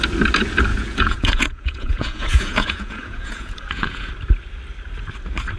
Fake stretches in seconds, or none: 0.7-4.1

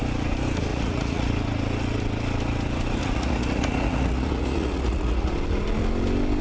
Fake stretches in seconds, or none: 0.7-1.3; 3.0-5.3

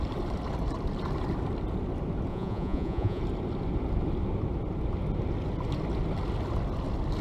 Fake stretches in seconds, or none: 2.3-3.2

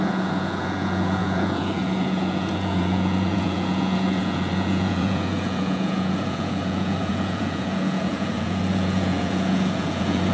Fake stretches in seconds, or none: 0.0-10.3

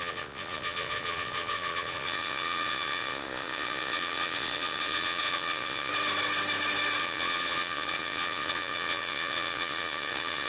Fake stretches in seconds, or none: 0.0-5.9; 7.0-10.5